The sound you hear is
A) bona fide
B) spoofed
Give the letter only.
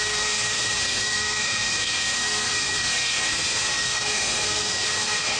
B